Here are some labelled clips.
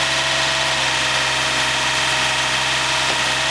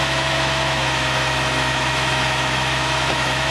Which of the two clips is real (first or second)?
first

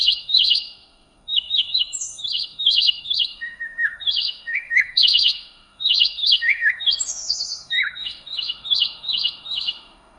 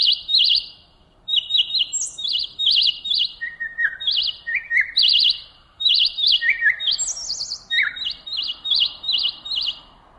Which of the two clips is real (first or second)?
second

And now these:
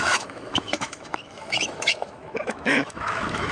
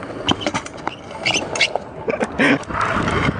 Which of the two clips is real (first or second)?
second